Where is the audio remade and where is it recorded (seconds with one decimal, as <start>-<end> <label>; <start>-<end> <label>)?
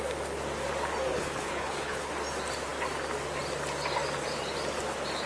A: 0.0-1.1 recorded; 1.1-2.1 remade; 2.1-5.3 recorded